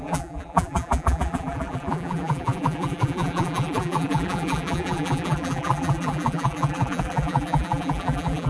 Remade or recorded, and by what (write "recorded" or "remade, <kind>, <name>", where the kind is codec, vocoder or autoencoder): remade, vocoder, BigVGAN v2